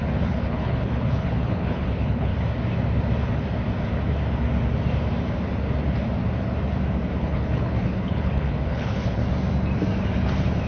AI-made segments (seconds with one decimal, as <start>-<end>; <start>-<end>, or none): 0.0-2.3; 7.2-9.2